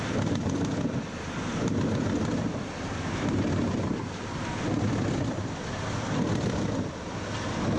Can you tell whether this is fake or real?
real